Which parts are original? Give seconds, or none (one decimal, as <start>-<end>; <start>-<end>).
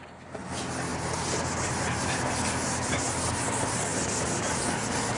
0.0-5.2